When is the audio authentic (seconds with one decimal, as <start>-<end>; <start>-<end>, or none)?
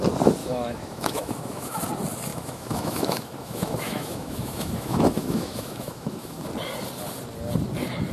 0.0-0.4; 1.8-2.3; 6.5-8.1